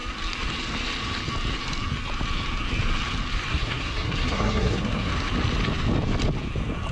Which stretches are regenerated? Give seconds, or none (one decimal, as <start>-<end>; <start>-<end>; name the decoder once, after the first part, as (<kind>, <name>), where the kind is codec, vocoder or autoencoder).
3.5-5.1 (codec, SNAC)